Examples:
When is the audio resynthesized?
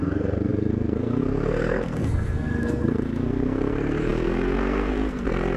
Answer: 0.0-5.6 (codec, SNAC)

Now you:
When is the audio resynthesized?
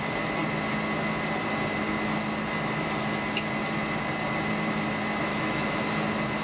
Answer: 5.3-5.8 (autoencoder, DAC-VAE)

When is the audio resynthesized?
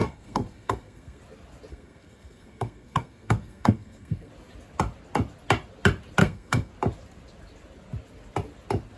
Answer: 0.0-1.2 (codec, SNAC); 1.7-4.3; 6.2-6.7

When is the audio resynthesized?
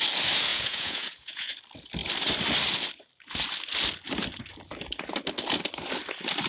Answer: 0.5-1.5 (vocoder, Vocos)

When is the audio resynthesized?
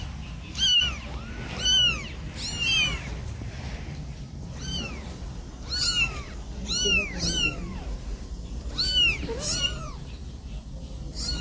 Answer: none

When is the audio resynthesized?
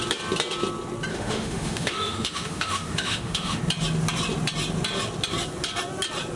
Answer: 1.1-3.6 (autoencoder, DAC-VAE)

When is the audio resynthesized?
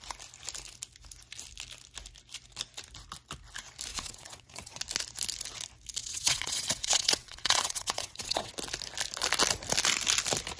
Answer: 3.9-4.8 (vocoder, WaveNeXt); 6.0-8.5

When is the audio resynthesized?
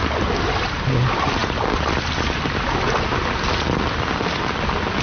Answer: none